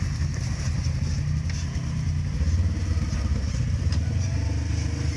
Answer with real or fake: real